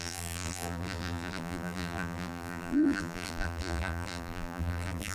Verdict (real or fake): fake